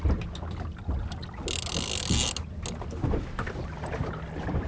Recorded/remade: recorded